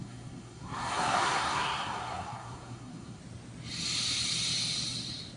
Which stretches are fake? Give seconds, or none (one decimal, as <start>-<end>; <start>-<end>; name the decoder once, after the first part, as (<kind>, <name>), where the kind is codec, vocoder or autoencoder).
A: 0.0-3.2 (codec, SNAC)